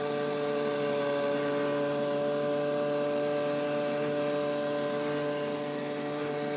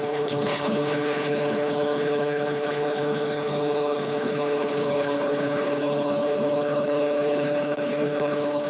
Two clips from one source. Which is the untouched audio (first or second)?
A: first